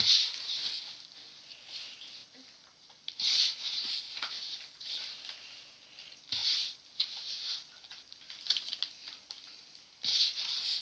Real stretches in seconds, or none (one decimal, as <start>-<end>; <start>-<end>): 0.0-10.8